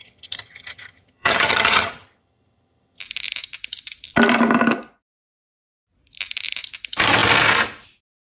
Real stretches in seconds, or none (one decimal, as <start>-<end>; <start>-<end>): 3.0-8.2